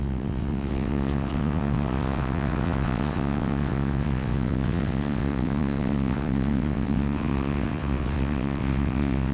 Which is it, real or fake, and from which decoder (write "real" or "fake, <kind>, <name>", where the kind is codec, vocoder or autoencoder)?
fake, vocoder, WaveNeXt